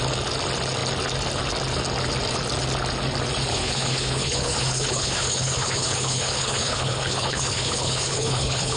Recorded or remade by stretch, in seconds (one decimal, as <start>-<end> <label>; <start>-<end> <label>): 0.0-3.5 recorded; 3.5-8.8 remade